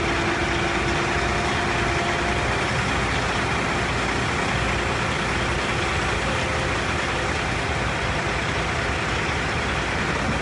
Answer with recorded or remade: recorded